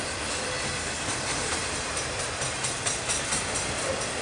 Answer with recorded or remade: recorded